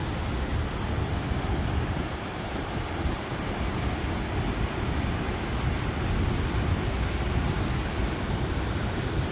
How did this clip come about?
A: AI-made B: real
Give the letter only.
B